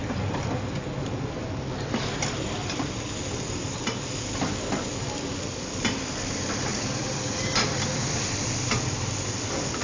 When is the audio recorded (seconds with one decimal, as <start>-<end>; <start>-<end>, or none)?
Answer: 0.0-6.7; 9.1-9.8